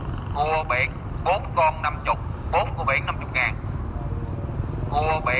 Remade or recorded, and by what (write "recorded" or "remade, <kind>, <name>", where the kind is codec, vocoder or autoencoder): recorded